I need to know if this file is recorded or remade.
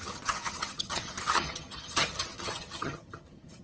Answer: remade